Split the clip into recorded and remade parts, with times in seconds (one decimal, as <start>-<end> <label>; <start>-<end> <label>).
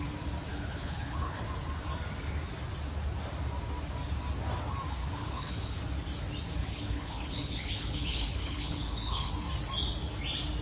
0.0-0.5 recorded; 0.5-1.4 remade; 1.4-5.0 recorded; 5.0-5.8 remade; 5.8-6.6 recorded; 6.6-9.3 remade; 9.3-10.6 recorded